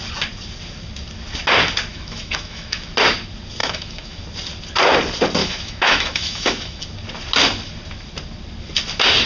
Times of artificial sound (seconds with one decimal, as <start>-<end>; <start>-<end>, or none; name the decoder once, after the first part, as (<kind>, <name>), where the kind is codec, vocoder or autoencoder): 1.9-2.9 (autoencoder, DAC-VAE); 3.6-4.2; 5.4-6.8